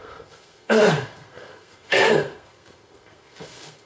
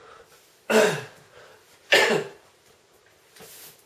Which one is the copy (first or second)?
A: first